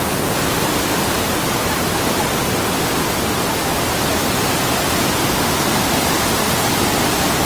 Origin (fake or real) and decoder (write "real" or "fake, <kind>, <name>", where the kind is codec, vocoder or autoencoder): real